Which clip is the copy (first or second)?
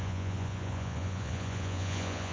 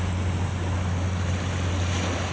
first